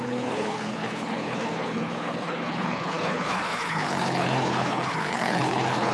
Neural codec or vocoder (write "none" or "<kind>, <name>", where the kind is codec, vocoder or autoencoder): codec, HILCodec